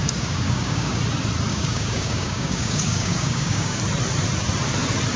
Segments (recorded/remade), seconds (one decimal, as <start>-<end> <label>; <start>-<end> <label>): 0.0-1.0 remade; 1.0-1.5 recorded; 1.5-3.8 remade; 3.8-5.2 recorded